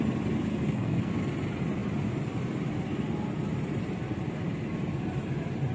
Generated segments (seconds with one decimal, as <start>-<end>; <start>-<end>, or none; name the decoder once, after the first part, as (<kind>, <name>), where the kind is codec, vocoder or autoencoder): 0.5-1.1 (codec, SNAC)